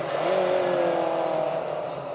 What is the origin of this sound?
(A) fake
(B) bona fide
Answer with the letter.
B